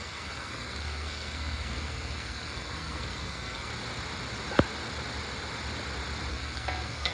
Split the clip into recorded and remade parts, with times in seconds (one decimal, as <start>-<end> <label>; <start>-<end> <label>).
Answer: 0.0-3.7 remade; 3.7-6.3 recorded; 6.3-7.1 remade